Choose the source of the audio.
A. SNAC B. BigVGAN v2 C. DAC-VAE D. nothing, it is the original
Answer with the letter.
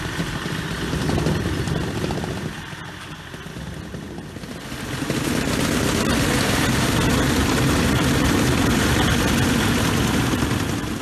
D